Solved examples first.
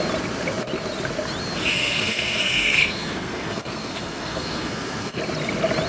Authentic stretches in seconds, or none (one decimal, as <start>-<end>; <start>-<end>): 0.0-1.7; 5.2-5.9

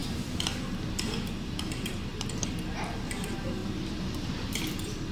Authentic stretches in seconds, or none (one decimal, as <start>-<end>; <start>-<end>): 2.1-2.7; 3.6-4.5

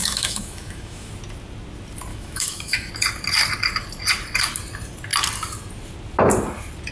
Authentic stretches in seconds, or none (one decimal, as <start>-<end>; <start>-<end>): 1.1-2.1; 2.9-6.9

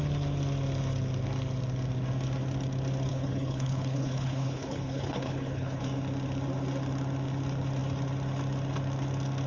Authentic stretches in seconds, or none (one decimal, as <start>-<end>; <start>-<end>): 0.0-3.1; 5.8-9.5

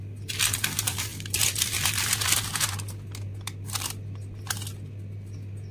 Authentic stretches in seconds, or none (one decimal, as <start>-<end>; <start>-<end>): 0.0-5.7

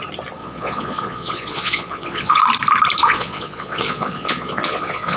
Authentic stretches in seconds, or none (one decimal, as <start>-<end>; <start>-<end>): 0.0-0.4; 2.4-3.0